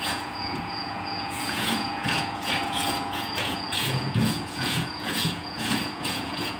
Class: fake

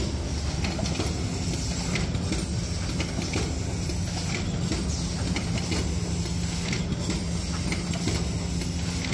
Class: real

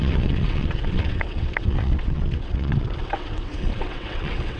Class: fake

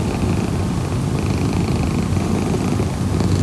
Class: real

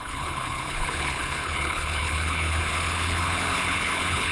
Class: fake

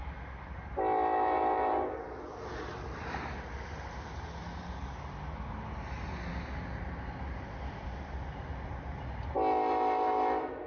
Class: real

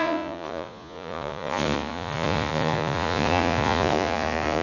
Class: fake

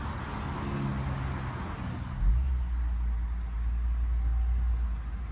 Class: real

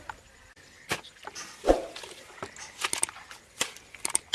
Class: real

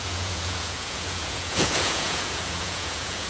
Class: fake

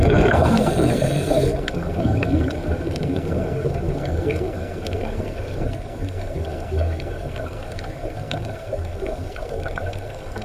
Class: fake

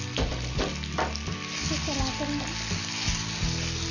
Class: real